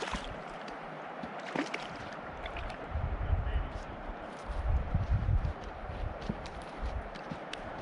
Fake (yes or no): yes